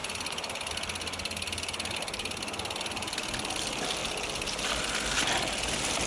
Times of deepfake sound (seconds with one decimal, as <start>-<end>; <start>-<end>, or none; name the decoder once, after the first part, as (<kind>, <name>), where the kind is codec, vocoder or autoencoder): none